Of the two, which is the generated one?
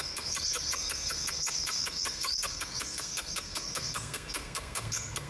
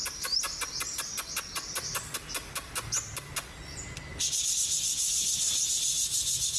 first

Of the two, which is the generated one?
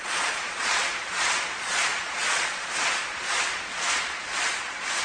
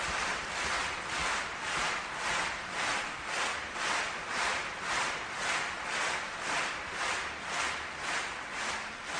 first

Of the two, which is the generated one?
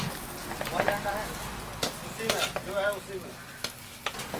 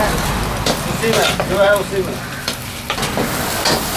second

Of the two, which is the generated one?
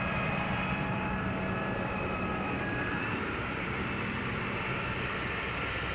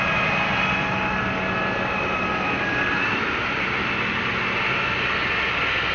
first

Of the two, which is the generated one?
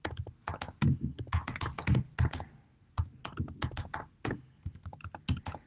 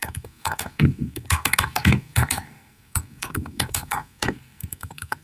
second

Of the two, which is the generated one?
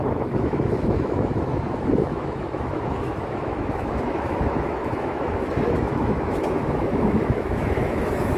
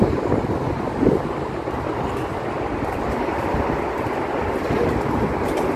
first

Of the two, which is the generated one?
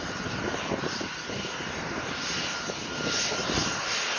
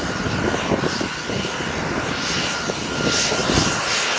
first